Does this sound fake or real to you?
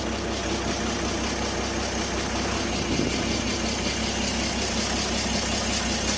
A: real